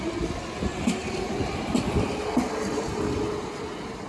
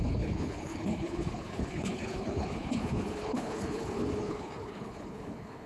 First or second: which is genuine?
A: first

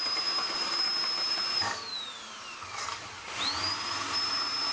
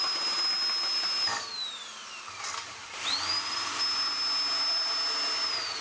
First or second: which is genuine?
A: second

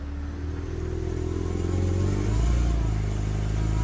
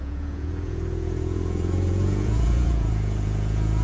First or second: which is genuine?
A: first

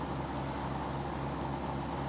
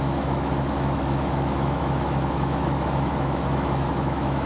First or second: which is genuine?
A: first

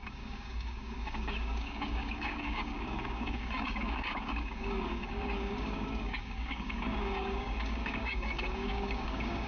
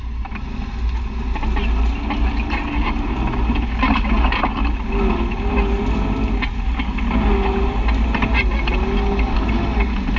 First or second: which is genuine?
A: second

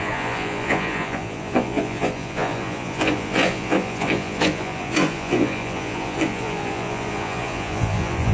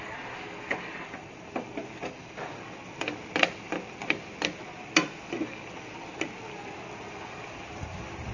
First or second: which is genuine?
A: second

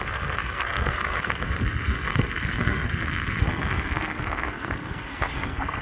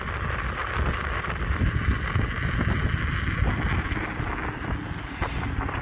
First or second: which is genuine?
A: second